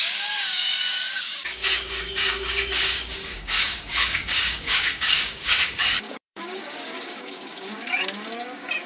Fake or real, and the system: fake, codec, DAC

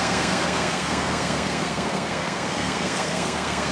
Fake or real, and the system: fake, codec, SNAC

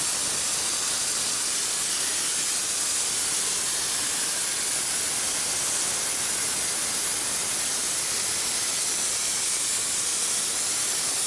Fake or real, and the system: real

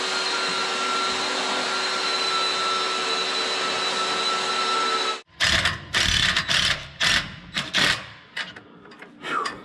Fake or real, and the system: real